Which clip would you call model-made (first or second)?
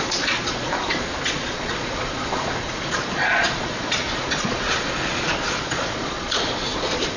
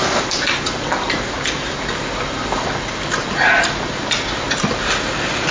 first